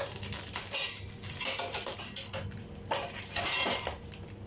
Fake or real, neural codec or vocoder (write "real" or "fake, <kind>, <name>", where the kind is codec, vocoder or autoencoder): real